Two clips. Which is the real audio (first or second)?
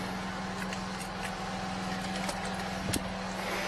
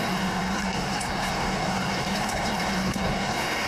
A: first